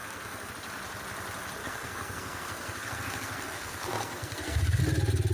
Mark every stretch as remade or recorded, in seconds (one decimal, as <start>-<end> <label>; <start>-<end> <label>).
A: 0.0-0.5 remade; 0.5-1.6 recorded; 1.6-4.8 remade; 4.8-5.3 recorded